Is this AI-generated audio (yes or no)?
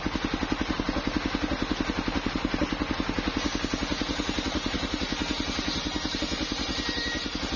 no